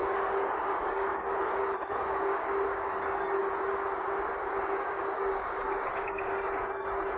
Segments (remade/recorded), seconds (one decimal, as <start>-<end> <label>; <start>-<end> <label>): 0.0-3.4 remade; 3.4-4.6 recorded; 4.6-7.2 remade